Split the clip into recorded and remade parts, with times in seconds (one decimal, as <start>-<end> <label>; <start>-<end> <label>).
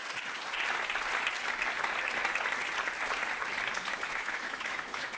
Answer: 0.0-3.9 recorded; 3.9-5.2 remade